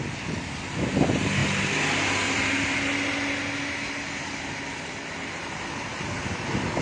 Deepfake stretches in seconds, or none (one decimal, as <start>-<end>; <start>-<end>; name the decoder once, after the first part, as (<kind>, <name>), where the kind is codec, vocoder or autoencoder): none

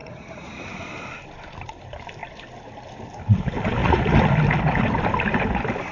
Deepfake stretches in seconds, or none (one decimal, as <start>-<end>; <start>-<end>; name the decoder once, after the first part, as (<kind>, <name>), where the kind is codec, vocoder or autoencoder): 0.0-0.8 (vocoder, Vocos); 3.8-4.3

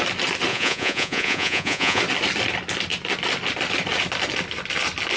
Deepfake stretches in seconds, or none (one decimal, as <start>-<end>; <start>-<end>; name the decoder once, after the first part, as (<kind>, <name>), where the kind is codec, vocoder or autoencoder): 0.5-2.0 (vocoder, Vocos)